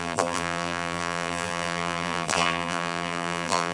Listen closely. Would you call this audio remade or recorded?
remade